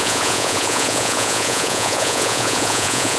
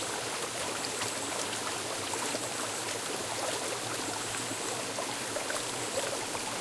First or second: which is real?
second